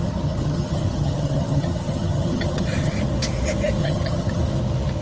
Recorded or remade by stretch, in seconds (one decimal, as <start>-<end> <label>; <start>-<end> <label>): 0.0-3.0 remade; 3.0-3.8 recorded; 3.8-4.4 remade; 4.4-5.0 recorded